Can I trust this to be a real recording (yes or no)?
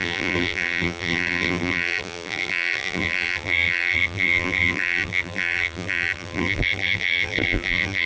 no